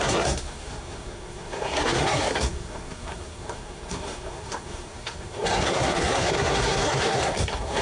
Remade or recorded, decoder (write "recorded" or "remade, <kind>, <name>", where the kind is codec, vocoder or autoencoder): remade, codec, SNAC